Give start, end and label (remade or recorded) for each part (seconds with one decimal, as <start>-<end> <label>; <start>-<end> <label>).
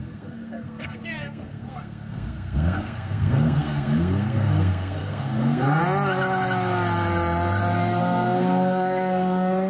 0.0-5.8 remade; 5.8-8.0 recorded; 8.0-9.7 remade